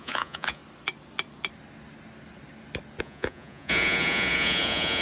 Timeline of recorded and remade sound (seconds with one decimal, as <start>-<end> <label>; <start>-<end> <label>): 0.0-0.6 remade; 0.6-3.0 recorded; 3.0-5.0 remade